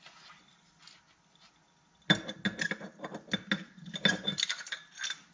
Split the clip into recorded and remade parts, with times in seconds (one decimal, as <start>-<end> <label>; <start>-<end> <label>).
0.0-5.3 recorded